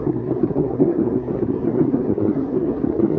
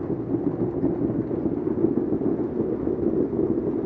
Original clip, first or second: second